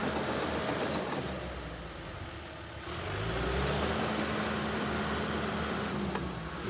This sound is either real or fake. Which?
real